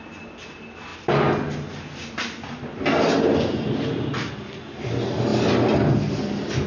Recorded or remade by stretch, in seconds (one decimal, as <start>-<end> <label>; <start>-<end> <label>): 0.0-6.7 recorded